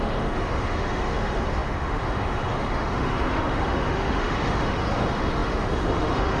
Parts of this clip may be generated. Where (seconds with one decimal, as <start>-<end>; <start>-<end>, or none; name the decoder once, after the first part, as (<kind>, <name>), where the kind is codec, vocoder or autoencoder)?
0.0-6.4 (autoencoder, DAC-VAE)